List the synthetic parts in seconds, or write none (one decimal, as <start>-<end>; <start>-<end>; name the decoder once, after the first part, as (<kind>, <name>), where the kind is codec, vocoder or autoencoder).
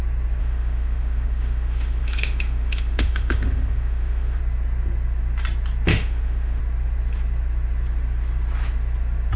0.4-4.4 (autoencoder, DAC-VAE); 5.9-6.6